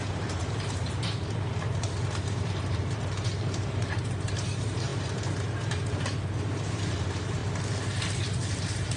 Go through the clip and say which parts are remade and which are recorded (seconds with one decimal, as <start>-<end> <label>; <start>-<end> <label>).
0.0-7.4 remade; 7.4-8.6 recorded; 8.6-9.0 remade